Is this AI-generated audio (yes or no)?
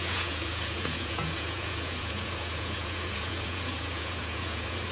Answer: yes